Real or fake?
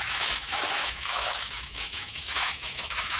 fake